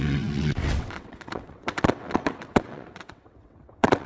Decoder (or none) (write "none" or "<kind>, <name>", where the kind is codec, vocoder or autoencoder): vocoder, WaveNeXt